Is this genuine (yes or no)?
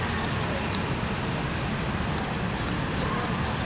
yes